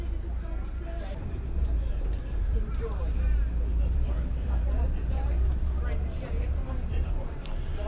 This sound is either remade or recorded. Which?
remade